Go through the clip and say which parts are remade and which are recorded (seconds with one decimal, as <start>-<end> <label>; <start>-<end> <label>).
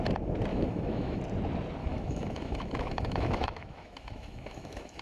0.0-0.5 recorded; 0.5-1.2 remade; 1.2-1.8 recorded; 1.8-5.0 remade